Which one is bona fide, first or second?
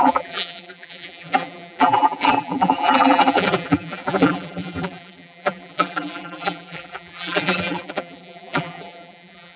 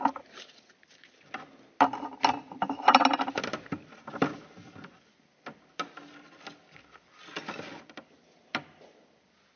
second